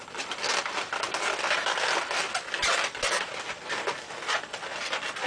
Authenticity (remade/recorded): recorded